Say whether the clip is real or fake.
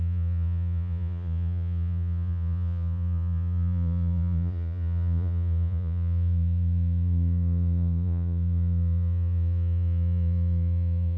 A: fake